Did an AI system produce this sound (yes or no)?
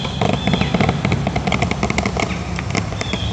no